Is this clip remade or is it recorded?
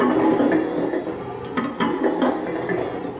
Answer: recorded